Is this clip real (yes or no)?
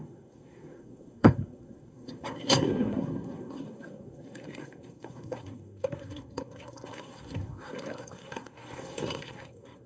no